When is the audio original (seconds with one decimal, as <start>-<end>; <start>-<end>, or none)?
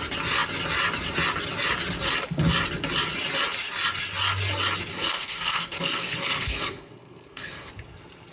0.0-4.9; 7.7-8.3